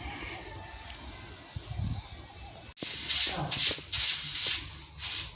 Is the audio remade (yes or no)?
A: no